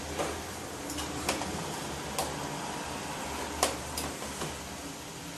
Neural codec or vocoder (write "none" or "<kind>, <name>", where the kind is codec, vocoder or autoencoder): none